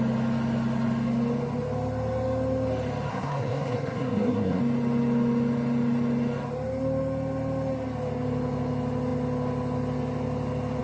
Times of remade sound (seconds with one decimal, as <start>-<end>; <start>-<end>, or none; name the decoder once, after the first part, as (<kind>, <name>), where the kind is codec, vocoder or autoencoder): 3.1-4.6 (codec, SNAC)